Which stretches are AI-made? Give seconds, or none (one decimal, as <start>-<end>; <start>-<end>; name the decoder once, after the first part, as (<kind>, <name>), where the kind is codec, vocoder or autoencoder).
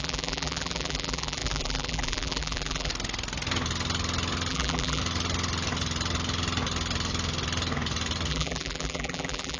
0.0-2.9 (vocoder, BigVGAN v2); 4.5-5.0; 8.3-9.6